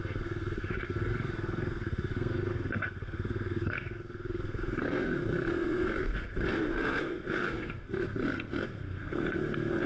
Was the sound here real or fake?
fake